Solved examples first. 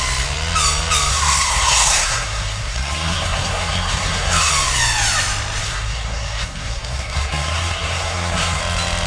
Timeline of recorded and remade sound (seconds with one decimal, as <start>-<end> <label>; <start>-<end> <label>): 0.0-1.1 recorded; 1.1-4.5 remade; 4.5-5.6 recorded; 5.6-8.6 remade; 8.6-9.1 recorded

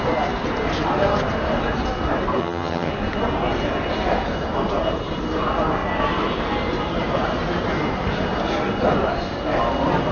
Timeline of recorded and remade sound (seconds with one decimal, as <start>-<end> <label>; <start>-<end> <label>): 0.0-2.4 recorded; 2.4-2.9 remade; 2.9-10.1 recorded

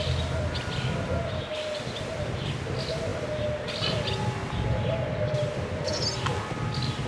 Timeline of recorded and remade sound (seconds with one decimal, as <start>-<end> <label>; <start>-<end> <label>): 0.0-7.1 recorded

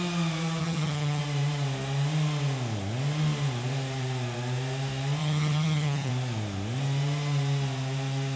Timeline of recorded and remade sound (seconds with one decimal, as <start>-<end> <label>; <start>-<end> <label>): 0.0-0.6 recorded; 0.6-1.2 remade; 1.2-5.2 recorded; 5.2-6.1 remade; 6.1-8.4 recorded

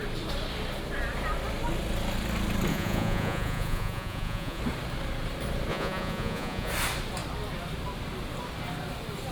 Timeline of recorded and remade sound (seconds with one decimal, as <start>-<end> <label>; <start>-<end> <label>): 0.0-2.7 recorded; 2.7-4.6 remade; 4.6-5.7 recorded; 5.7-6.7 remade; 6.7-9.3 recorded

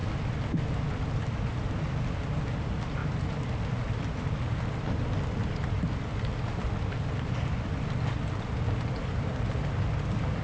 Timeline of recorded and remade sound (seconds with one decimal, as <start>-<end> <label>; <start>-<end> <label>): 0.0-1.3 recorded; 1.3-3.0 remade; 3.0-3.5 recorded; 3.5-10.4 remade

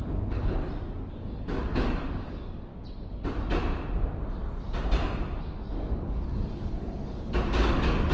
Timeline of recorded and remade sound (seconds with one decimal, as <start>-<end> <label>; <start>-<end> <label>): 0.0-0.6 remade; 0.6-1.1 recorded; 1.1-2.7 remade; 2.7-5.6 recorded; 5.6-8.1 remade